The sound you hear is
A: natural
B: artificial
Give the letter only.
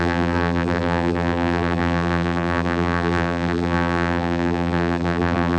B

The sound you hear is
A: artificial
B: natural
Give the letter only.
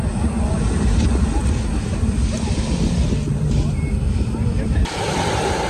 B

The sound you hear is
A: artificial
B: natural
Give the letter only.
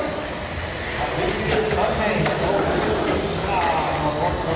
B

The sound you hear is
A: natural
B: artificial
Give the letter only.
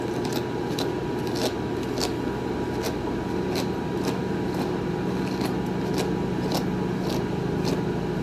A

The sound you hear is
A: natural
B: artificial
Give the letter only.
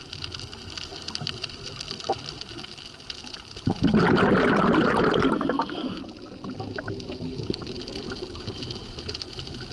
A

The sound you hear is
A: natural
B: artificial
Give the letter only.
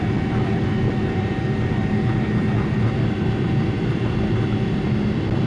B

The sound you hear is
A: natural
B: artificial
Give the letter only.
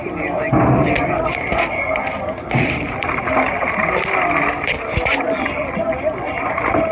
A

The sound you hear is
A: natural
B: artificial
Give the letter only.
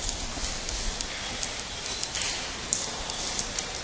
A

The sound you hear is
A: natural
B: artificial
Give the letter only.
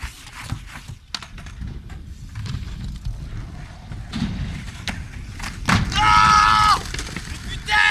A